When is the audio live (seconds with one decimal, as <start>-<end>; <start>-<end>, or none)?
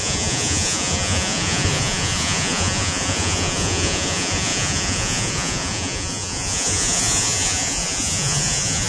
none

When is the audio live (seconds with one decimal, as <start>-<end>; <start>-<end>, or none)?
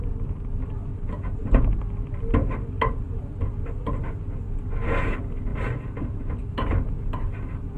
0.0-7.8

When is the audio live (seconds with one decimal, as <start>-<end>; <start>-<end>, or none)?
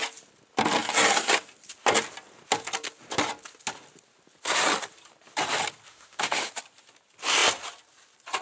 0.0-5.9; 6.5-8.4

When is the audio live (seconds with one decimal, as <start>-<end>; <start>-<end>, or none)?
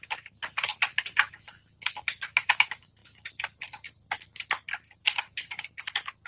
0.7-2.0; 3.0-3.6; 4.0-4.7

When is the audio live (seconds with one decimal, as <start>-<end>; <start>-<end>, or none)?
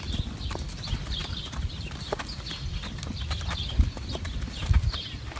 0.0-5.4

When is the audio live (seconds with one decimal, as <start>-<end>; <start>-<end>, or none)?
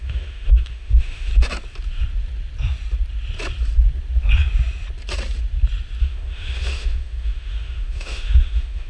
1.3-6.0